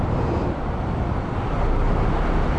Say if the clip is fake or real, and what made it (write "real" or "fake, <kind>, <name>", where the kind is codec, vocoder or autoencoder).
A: real